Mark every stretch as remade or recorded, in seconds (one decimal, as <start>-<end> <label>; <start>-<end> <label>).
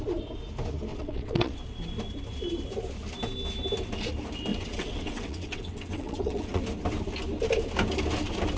0.0-0.9 recorded; 0.9-1.6 remade; 1.6-4.5 recorded; 4.5-6.6 remade; 6.6-8.6 recorded